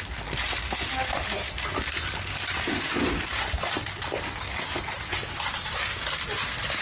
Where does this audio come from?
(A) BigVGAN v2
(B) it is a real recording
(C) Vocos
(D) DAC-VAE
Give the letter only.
B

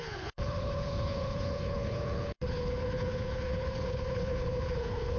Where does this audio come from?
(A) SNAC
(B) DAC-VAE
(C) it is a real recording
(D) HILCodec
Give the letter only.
D